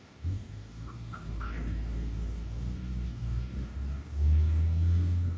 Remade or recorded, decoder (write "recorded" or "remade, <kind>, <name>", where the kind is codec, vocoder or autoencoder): remade, codec, DAC